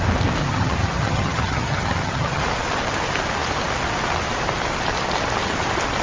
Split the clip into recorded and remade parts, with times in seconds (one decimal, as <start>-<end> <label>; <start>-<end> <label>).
0.0-0.4 recorded; 0.4-2.4 remade; 2.4-6.0 recorded